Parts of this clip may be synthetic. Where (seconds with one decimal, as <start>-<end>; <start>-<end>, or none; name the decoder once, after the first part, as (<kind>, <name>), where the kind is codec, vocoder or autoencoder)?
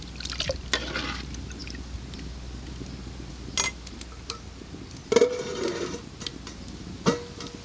none